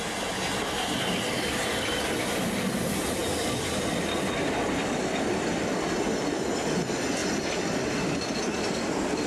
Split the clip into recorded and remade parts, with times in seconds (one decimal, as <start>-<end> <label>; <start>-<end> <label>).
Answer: 0.0-9.3 recorded